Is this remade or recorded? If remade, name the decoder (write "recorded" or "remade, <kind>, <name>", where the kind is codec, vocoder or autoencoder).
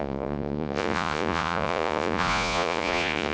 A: remade, vocoder, Vocos